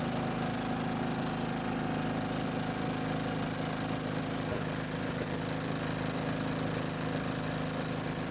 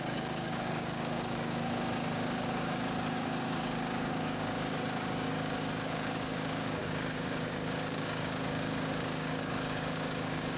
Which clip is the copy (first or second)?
second